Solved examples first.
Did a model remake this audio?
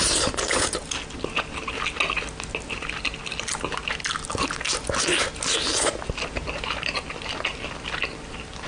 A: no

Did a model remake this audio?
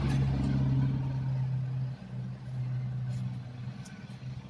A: no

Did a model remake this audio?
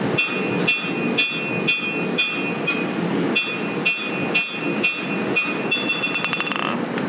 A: no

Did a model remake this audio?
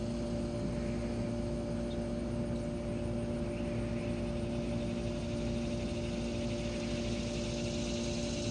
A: no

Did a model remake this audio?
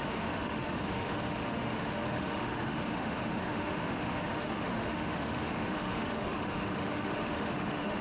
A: yes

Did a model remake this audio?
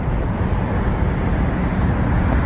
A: no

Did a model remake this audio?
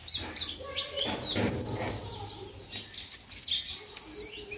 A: no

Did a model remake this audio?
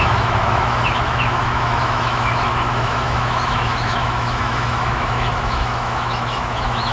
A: yes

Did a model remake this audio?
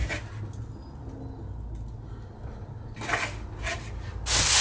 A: no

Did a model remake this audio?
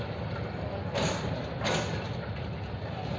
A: no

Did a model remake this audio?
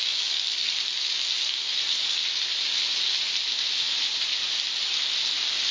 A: no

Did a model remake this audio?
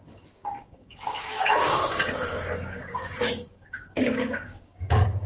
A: yes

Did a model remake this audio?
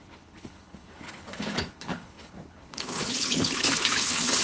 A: yes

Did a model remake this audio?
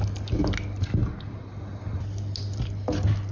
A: no